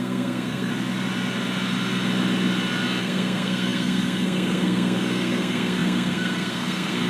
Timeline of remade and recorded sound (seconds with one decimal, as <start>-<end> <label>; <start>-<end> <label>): 0.0-0.7 remade; 0.7-3.0 recorded; 3.0-7.1 remade